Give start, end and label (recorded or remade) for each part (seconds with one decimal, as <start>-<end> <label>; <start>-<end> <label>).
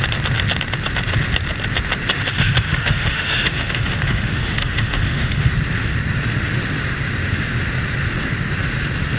0.0-2.7 recorded; 2.7-5.5 remade; 5.5-9.2 recorded